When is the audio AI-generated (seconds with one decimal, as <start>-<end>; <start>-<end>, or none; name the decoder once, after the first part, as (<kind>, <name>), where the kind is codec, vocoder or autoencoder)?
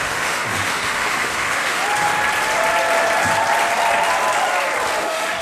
0.0-1.8 (autoencoder, DAC-VAE); 5.0-5.4